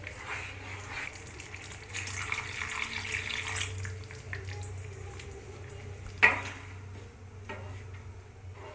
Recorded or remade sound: recorded